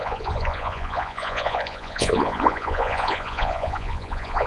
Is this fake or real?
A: fake